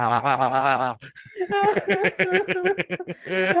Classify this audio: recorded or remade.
remade